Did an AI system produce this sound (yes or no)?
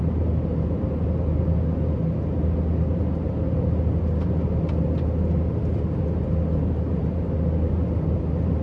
no